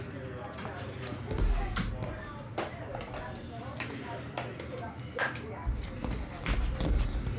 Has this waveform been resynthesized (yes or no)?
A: no